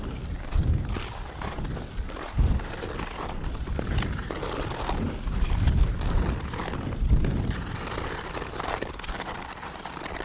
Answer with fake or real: real